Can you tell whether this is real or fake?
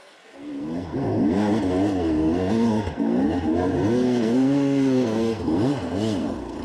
fake